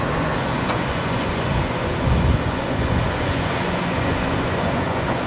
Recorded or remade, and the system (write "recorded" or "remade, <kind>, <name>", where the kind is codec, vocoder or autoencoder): remade, vocoder, Vocos